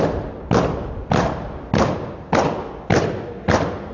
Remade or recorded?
recorded